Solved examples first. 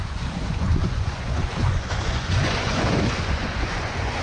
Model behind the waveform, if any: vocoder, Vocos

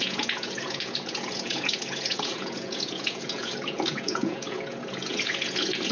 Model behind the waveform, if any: vocoder, Vocos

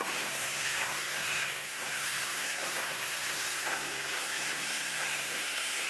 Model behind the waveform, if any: codec, SNAC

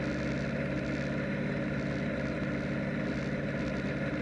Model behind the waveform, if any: none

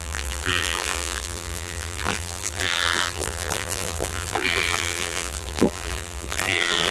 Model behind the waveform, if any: vocoder, BigVGAN v2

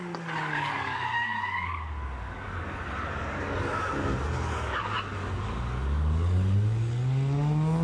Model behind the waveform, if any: codec, DAC